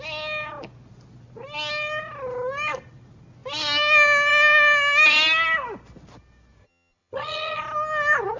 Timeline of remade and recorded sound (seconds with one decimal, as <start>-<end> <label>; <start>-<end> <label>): 0.0-6.6 recorded; 6.6-7.6 remade; 7.6-8.4 recorded